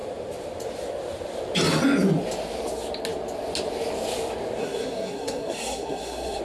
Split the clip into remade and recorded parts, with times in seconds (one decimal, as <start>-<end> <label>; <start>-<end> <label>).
0.0-4.6 recorded; 4.6-6.4 remade